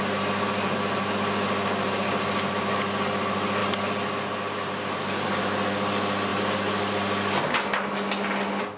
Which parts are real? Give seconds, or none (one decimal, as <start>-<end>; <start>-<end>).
0.0-8.8